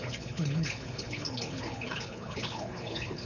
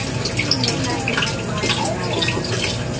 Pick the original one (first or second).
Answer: second